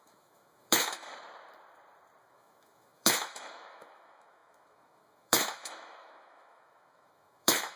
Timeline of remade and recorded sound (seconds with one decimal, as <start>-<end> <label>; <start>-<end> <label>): 0.0-1.1 remade; 1.1-2.2 recorded; 2.2-7.8 remade